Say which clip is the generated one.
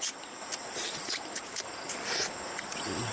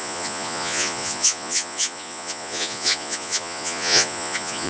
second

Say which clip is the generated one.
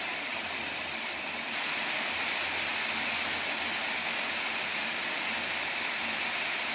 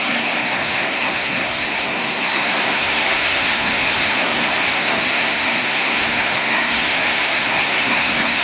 second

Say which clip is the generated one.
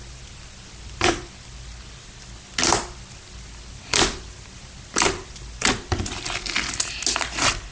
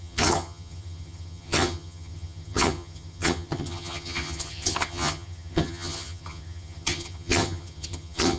second